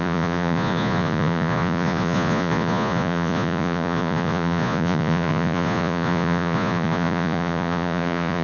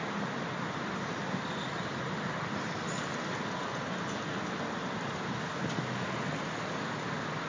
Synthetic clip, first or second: first